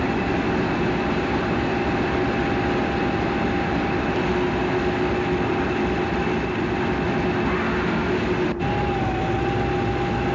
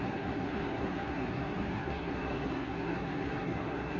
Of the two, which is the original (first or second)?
first